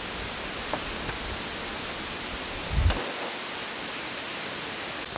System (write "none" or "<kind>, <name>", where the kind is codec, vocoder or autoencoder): none